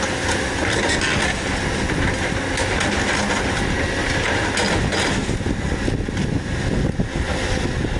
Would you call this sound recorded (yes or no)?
yes